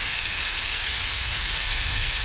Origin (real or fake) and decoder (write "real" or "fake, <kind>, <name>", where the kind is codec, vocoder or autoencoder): fake, codec, SNAC